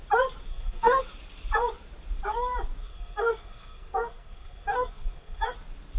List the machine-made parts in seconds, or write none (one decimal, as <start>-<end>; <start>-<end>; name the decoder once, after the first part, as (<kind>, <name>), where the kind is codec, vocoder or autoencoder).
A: 0.5-1.0 (codec, SNAC); 2.8-5.5